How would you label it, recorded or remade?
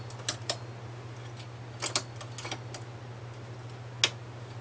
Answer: recorded